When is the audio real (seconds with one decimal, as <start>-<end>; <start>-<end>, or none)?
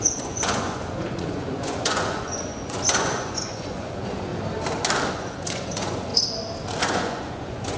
4.3-5.1; 6.1-6.8